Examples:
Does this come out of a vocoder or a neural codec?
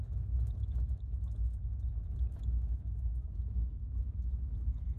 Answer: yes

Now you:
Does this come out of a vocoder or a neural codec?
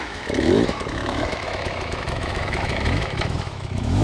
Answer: yes